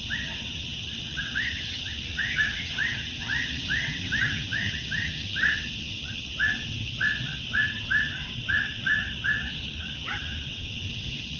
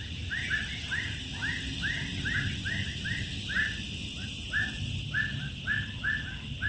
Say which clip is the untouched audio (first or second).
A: second